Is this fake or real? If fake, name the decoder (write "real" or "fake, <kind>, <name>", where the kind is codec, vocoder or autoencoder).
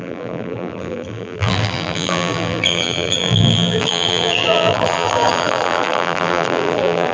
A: fake, vocoder, BigVGAN v2